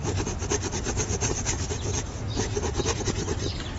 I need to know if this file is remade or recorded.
recorded